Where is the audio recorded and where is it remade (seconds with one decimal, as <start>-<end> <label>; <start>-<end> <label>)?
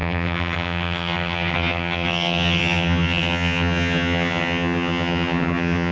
0.0-5.9 remade